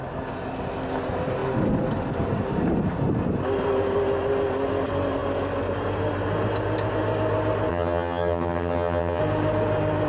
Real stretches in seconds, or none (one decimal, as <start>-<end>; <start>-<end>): 0.0-7.7; 9.2-10.1